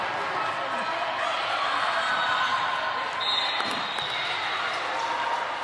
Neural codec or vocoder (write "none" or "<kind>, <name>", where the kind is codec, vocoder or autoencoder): none